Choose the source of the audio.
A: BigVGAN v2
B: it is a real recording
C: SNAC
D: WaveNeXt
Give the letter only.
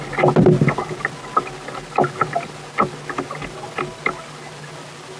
B